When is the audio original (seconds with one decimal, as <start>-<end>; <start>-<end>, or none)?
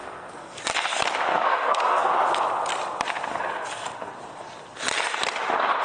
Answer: 0.6-1.3; 2.1-3.3; 4.1-5.8